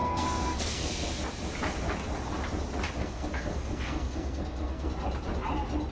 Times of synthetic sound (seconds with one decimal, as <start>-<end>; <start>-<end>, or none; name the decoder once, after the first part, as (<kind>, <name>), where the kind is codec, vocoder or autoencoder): 0.0-1.1 (codec, SNAC); 3.0-4.9